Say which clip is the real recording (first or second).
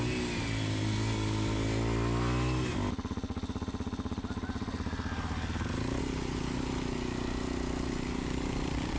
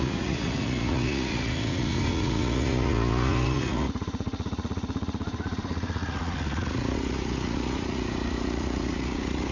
first